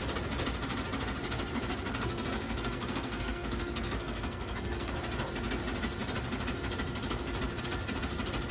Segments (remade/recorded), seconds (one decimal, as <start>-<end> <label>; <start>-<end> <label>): 0.0-1.9 recorded; 1.9-4.9 remade; 4.9-8.5 recorded